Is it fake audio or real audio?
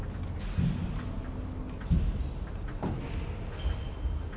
real